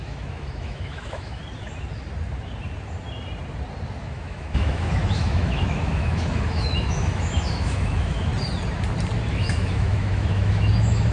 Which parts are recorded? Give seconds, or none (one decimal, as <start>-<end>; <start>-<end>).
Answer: 1.4-4.0; 8.3-9.3